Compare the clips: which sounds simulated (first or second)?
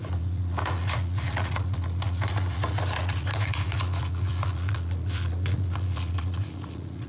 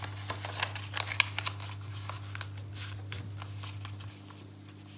first